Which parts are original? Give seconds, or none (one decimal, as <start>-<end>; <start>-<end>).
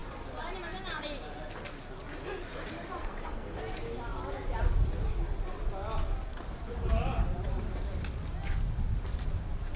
0.0-3.0; 3.6-9.8